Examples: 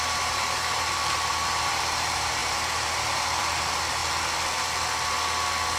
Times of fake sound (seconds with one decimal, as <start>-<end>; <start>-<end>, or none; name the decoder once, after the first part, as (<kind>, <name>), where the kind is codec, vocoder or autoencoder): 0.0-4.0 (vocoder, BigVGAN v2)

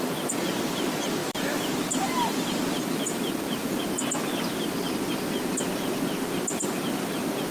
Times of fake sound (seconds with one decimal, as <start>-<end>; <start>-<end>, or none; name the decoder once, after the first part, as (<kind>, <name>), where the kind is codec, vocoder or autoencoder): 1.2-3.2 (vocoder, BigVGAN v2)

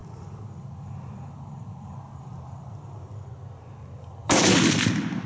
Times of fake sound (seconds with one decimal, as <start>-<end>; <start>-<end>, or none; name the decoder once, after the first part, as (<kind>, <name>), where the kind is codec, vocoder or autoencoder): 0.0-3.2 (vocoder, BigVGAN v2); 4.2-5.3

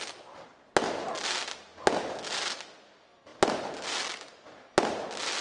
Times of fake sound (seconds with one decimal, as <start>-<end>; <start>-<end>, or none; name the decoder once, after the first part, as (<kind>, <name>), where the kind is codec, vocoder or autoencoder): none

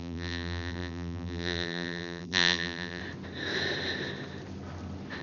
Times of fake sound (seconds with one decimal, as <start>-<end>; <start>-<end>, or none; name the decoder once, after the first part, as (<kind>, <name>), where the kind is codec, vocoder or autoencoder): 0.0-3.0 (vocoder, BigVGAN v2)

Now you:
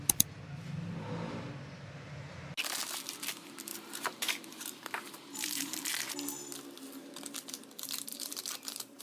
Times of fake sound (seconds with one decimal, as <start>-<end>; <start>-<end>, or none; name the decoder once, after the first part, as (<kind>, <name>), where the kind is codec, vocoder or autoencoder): 3.7-5.9 (vocoder, BigVGAN v2); 8.1-9.0

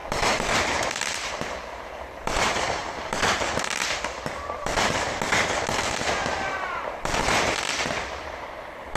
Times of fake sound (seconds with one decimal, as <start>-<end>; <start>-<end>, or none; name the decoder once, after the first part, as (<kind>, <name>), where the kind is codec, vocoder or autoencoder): 0.0-5.2 (vocoder, BigVGAN v2); 6.2-7.2